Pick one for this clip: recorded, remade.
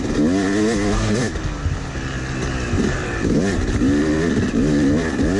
recorded